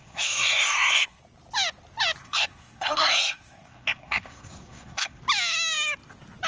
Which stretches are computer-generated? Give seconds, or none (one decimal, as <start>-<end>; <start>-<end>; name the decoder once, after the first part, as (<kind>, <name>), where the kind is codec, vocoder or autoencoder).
0.0-1.2 (codec, SNAC); 2.2-5.2